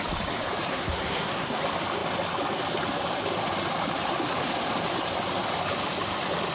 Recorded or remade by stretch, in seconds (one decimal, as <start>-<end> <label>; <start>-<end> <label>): 0.0-0.7 recorded; 0.7-1.6 remade; 1.6-6.5 recorded